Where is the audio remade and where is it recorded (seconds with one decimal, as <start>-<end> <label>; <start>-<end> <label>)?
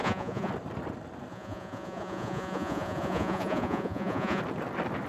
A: 0.0-0.5 remade; 0.5-1.3 recorded; 1.3-4.4 remade; 4.4-5.1 recorded